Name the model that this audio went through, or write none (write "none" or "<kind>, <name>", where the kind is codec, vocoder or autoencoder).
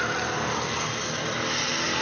none